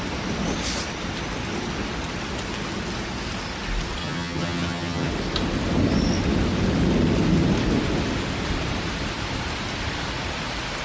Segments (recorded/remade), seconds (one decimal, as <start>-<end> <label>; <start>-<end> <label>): 0.0-4.0 recorded; 4.0-5.1 remade; 5.1-10.8 recorded